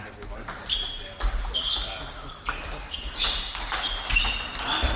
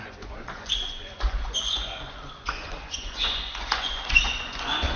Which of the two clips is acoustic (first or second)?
first